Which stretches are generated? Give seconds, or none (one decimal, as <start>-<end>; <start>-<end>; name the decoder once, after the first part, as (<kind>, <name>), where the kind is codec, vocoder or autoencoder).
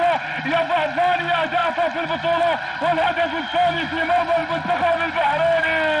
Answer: none